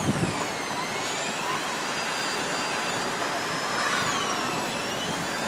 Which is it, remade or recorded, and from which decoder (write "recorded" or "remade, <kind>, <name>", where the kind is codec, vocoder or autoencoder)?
recorded